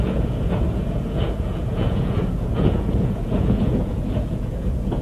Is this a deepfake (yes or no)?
yes